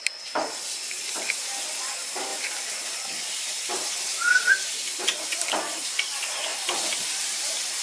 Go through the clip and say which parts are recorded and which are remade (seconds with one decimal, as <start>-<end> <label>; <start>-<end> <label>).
0.0-6.5 recorded; 6.5-7.8 remade